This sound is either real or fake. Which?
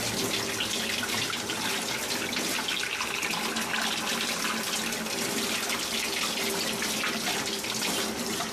real